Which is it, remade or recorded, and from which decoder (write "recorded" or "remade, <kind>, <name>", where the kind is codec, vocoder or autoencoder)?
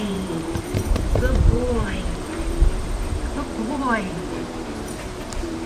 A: remade, vocoder, BigVGAN v2